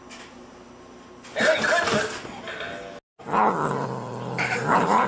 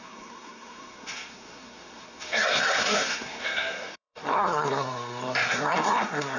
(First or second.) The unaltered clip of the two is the first